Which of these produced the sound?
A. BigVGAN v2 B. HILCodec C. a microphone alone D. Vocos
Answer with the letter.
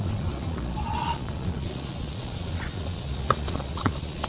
D